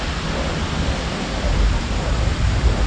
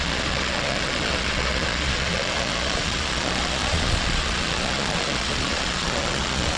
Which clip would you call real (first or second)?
first